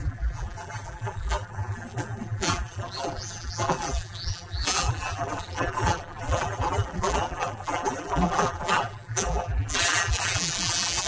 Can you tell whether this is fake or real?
fake